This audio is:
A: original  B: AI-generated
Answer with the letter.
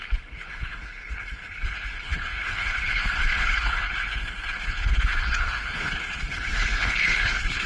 B